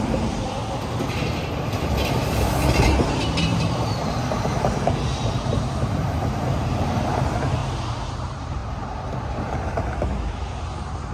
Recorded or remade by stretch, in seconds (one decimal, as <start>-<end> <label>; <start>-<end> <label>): 0.0-0.6 remade; 0.6-2.1 recorded; 2.1-7.6 remade; 7.6-8.1 recorded; 8.1-11.1 remade